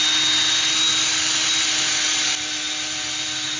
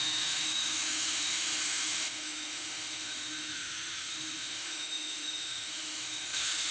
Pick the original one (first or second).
first